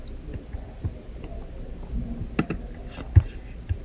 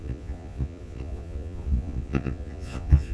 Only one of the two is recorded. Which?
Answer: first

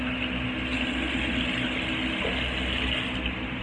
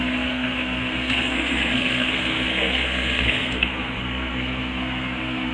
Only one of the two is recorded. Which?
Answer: first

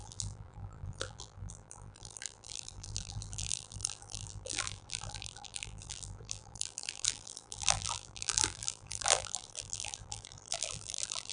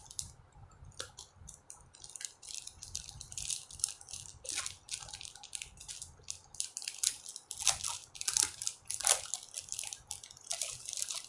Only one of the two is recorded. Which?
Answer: second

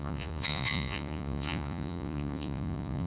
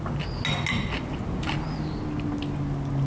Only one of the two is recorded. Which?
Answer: second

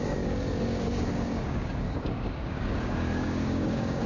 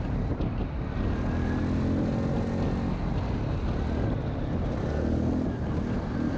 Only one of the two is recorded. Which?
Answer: second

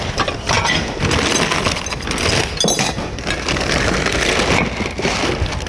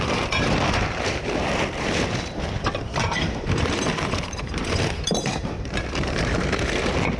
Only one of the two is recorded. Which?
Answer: first